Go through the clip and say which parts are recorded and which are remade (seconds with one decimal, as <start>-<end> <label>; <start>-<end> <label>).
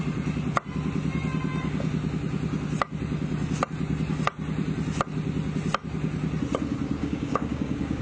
0.0-7.0 recorded; 7.0-8.0 remade